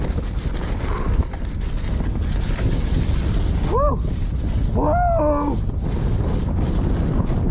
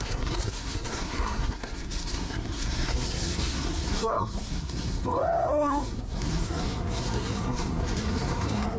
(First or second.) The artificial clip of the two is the second